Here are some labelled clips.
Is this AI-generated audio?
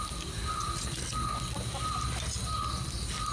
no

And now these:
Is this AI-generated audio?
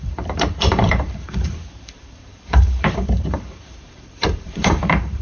yes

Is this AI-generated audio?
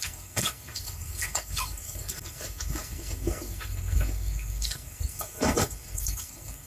yes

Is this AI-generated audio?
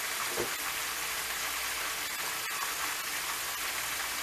no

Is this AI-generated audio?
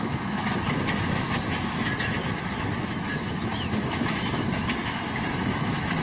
yes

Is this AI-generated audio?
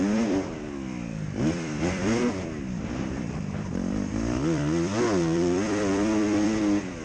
yes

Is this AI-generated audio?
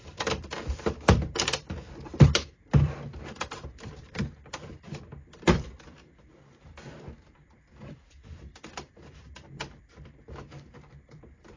yes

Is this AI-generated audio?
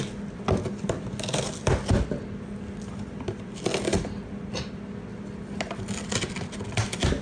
no